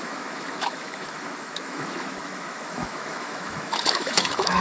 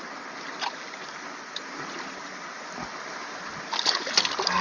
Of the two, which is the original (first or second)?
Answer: second